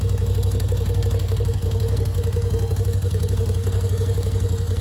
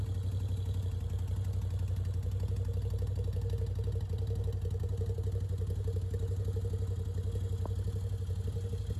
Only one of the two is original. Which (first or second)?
second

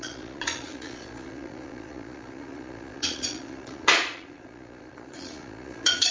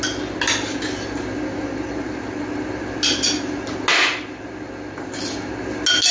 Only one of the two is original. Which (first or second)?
second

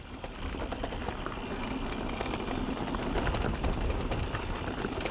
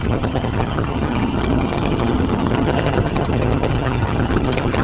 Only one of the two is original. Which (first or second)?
first